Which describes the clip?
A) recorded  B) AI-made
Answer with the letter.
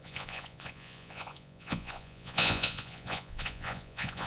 B